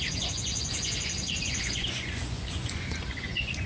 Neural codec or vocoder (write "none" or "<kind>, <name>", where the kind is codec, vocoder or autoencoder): vocoder, Vocos